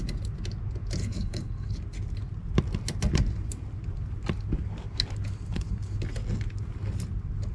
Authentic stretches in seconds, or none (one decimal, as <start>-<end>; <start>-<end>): 0.0-1.0; 1.7-7.5